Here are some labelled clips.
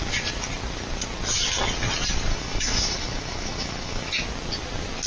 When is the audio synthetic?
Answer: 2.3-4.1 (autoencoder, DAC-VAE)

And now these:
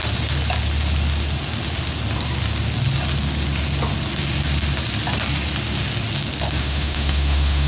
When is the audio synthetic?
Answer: 6.6-7.7 (autoencoder, DAC-VAE)

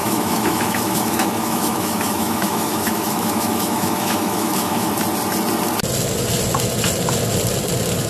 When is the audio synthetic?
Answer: 0.0-4.9 (autoencoder, DAC-VAE)

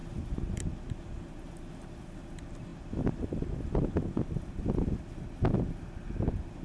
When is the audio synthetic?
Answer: none

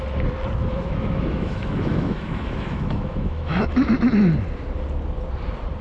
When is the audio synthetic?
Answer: 0.6-4.1 (autoencoder, DAC-VAE)

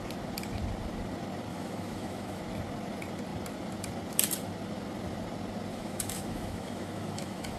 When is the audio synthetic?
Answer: 1.5-2.4 (autoencoder, DAC-VAE); 5.7-7.6

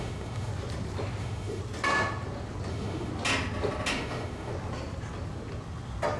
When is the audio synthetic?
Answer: 0.0-0.5 (autoencoder, DAC-VAE); 1.2-1.6; 2.7-3.1; 3.9-4.5

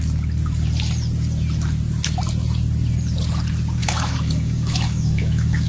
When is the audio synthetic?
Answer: 3.8-5.7 (autoencoder, DAC-VAE)